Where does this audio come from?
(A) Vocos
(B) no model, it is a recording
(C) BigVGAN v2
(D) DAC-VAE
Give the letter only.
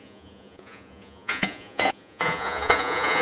A